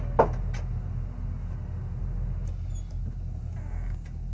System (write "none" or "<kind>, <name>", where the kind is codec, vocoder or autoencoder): none